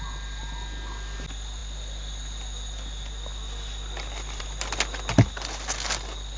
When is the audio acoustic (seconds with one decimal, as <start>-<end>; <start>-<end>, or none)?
0.0-6.4